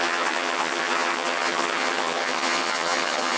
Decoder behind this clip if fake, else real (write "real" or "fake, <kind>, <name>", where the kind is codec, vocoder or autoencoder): fake, vocoder, HiFi-GAN